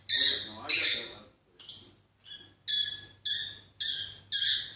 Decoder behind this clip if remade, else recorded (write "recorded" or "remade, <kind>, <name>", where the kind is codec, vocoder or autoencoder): recorded